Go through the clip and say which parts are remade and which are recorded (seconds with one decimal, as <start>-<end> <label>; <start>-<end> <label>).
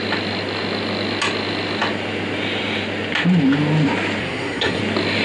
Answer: 0.0-4.2 recorded; 4.2-4.8 remade; 4.8-5.2 recorded